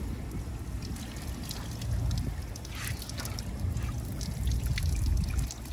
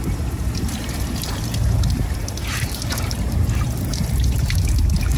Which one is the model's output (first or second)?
second